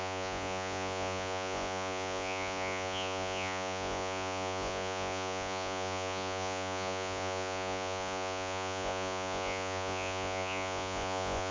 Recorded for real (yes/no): no